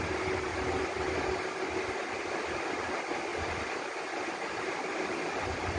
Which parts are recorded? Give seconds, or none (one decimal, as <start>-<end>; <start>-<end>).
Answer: 0.0-0.5; 1.4-3.3